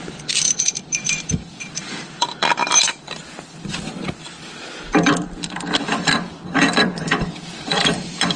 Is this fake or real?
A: fake